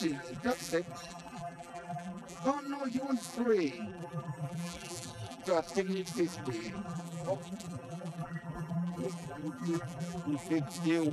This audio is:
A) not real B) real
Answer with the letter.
A